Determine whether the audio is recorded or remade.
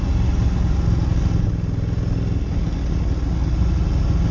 recorded